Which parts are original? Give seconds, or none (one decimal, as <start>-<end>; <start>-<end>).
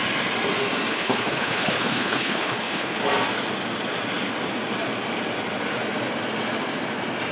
0.0-0.9; 3.0-7.3